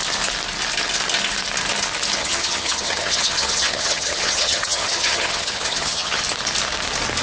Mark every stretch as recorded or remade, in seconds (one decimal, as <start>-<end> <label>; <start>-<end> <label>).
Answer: 0.0-2.2 recorded; 2.2-6.2 remade; 6.2-7.2 recorded